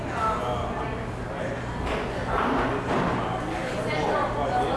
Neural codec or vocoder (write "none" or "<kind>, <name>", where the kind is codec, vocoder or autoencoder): none